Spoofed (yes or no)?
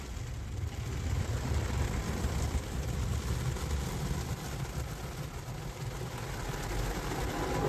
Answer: no